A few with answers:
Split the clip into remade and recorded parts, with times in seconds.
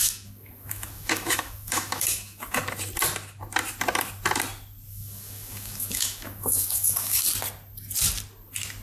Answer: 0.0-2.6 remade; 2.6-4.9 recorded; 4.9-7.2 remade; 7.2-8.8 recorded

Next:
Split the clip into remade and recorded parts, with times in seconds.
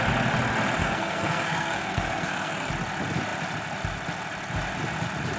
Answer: 0.0-0.8 recorded; 0.8-2.7 remade; 2.7-5.4 recorded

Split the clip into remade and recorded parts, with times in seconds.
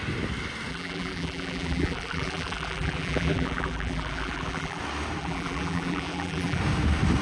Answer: 0.0-0.7 recorded; 0.7-4.8 remade; 4.8-5.2 recorded; 5.2-6.6 remade; 6.6-7.2 recorded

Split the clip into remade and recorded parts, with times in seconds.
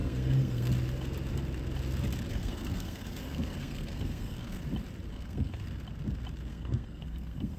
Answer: 0.0-0.7 remade; 0.7-2.3 recorded; 2.3-4.6 remade; 4.6-5.1 recorded; 5.1-5.6 remade; 5.6-6.5 recorded; 6.5-7.6 remade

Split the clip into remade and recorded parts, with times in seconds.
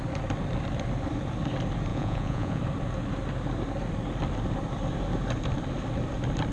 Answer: 0.0-1.9 recorded; 1.9-2.6 remade; 2.6-6.5 recorded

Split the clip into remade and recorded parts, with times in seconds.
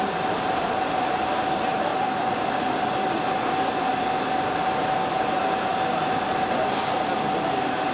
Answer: 0.0-7.9 recorded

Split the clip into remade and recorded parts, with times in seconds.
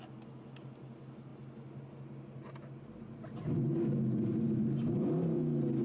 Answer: 0.0-5.8 recorded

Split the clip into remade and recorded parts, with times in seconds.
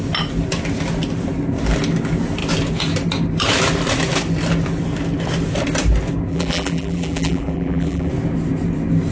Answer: 0.0-6.3 recorded; 6.3-8.1 remade; 8.1-9.1 recorded